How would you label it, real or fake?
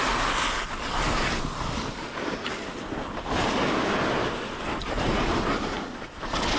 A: real